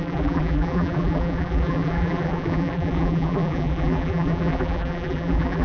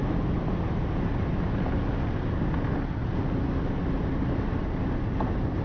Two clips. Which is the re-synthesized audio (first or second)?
first